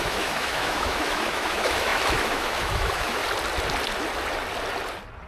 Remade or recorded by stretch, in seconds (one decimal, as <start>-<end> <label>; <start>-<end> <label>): 0.0-3.2 remade; 3.2-5.3 recorded